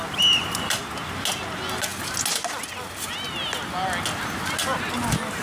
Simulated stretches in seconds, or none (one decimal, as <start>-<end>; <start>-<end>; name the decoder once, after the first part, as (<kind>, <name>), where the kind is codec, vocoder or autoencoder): none